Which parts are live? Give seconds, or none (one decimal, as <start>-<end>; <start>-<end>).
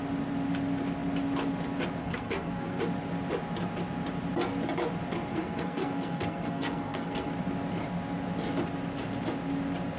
0.0-2.0; 2.8-5.3; 7.3-10.0